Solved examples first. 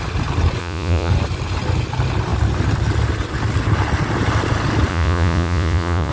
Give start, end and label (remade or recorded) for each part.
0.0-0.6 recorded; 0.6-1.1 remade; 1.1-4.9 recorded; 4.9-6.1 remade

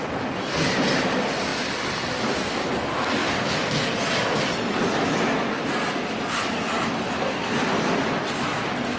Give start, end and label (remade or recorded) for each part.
0.0-9.0 recorded

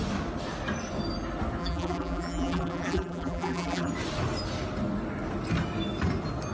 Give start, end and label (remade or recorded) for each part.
0.0-1.6 recorded; 1.6-3.9 remade; 3.9-6.5 recorded

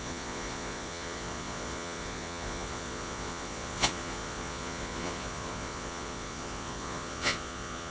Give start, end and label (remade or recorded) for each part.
0.0-7.9 remade

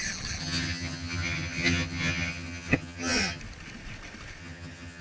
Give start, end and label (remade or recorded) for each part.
0.0-0.4 recorded; 0.4-3.4 remade; 3.4-4.4 recorded; 4.4-5.0 remade

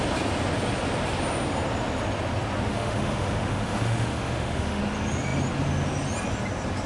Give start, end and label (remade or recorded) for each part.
0.0-2.7 recorded; 2.7-4.8 remade; 4.8-6.9 recorded

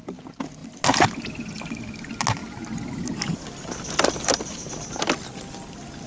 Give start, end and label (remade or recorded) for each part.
0.0-6.1 recorded